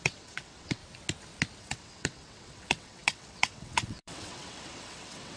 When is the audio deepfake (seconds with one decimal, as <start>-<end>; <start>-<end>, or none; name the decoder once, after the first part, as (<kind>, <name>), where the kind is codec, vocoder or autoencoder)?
0.0-0.8 (vocoder, WaveNeXt); 1.6-5.4